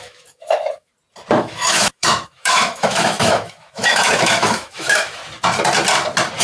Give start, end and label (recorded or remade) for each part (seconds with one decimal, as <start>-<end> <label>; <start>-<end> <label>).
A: 0.0-0.9 remade; 0.9-1.4 recorded; 1.4-5.2 remade; 5.2-6.4 recorded